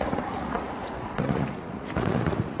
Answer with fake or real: fake